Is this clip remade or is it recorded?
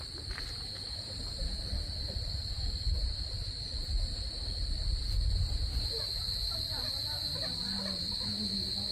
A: recorded